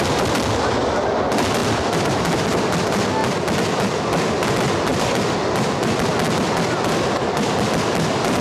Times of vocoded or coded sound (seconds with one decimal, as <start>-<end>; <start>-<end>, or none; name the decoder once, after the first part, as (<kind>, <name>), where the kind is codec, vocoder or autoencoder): none